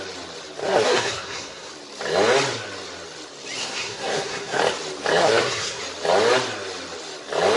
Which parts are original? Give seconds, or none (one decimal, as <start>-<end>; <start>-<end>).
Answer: 0.0-0.6; 1.7-3.6; 4.6-5.2; 5.8-7.6